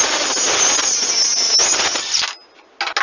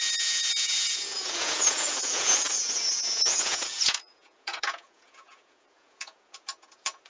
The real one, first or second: first